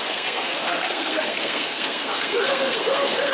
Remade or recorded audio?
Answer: remade